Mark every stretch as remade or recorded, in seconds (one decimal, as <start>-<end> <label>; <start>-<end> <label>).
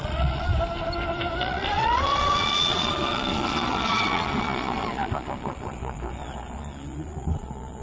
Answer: 0.0-0.5 remade; 0.5-1.4 recorded; 1.4-7.8 remade